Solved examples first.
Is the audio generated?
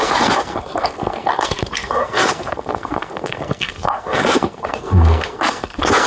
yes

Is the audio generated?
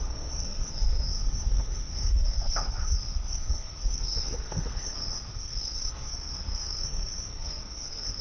yes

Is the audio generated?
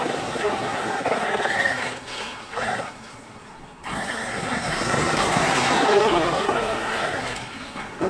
yes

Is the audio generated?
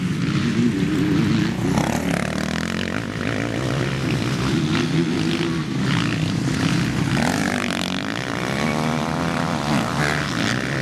no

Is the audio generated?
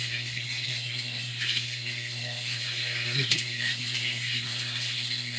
yes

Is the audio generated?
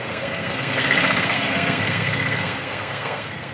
yes